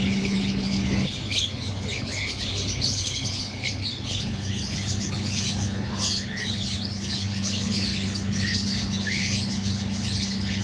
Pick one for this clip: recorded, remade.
remade